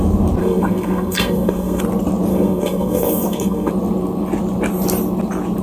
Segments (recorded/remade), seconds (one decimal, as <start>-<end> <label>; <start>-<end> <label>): 0.0-0.4 recorded; 0.4-1.8 remade; 1.8-2.3 recorded; 2.3-3.7 remade; 3.7-5.6 recorded